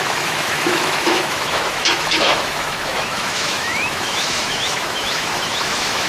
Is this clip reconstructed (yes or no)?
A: yes